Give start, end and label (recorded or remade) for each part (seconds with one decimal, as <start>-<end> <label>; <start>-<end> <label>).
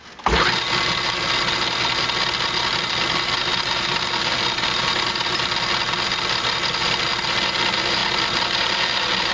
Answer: 0.0-9.3 recorded